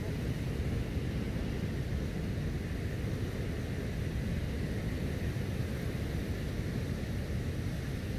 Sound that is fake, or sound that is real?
real